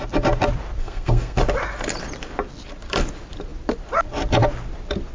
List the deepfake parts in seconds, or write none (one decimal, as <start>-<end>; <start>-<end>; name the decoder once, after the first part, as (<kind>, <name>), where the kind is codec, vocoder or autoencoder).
0.8-1.4 (codec, SNAC)